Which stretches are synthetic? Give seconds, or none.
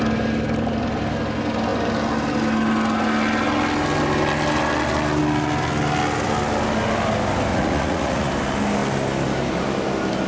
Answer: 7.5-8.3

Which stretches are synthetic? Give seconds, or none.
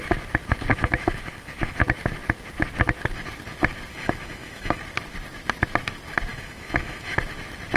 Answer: 0.7-1.8; 3.9-4.8; 6.3-7.2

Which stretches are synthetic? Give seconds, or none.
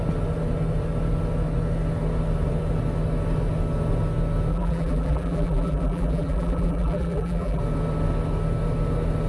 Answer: 4.5-7.6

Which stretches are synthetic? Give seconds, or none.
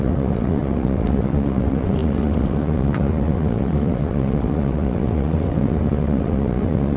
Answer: 0.0-7.0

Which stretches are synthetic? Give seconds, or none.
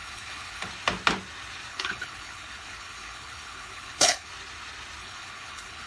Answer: 0.0-0.7; 1.7-4.3; 5.0-5.9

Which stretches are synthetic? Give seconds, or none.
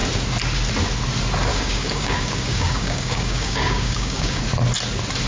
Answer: 1.5-4.4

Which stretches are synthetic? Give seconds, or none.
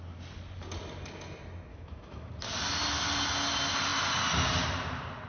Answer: 1.7-2.3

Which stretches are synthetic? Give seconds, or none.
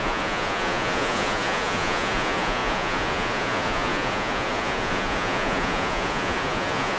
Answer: 0.0-7.0